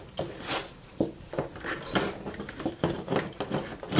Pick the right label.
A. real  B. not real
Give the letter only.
A